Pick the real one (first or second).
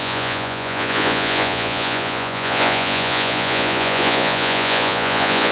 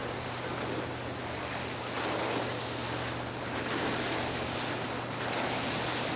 second